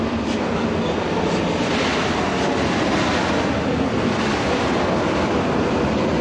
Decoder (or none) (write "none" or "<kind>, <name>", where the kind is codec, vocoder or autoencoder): none